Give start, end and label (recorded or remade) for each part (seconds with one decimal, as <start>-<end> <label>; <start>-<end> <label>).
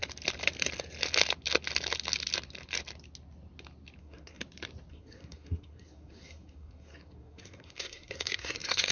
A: 0.0-4.0 recorded; 4.0-4.4 remade; 4.4-4.9 recorded; 4.9-8.9 remade